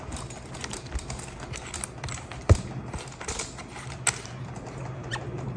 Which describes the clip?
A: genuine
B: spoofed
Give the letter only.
A